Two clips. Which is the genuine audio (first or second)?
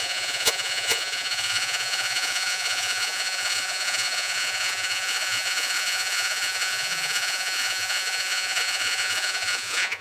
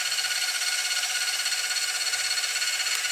second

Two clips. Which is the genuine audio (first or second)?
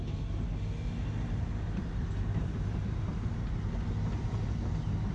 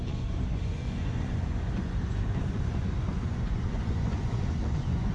first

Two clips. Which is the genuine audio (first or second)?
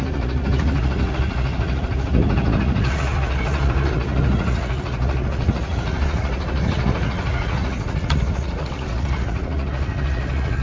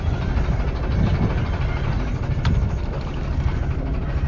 second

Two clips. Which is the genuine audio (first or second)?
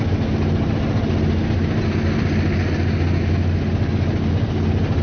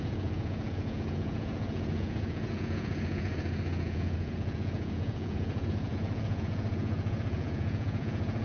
first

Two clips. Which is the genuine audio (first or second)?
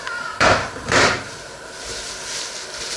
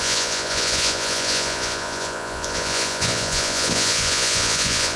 first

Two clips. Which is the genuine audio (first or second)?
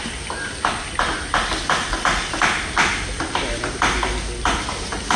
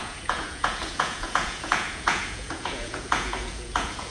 first